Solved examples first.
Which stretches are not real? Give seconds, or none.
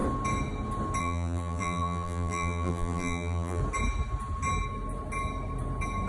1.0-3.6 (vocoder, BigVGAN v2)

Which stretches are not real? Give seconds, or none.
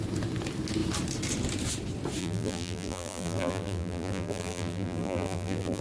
2.2-5.8 (vocoder, BigVGAN v2)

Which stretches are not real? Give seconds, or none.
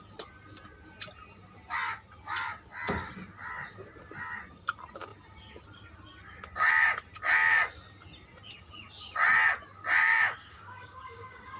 10.0-11.6 (codec, DAC)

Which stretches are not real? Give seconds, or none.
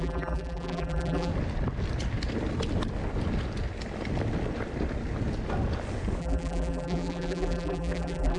0.0-1.3 (vocoder, BigVGAN v2); 6.2-8.4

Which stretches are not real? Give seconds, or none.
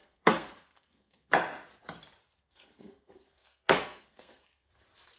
0.0-1.3 (codec, SNAC); 2.2-4.7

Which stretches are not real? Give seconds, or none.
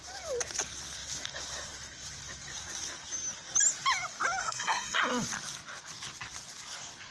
4.4-5.0 (codec, SNAC)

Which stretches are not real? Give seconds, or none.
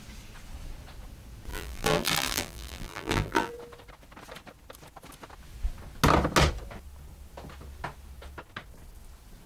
1.5-3.5 (vocoder, BigVGAN v2)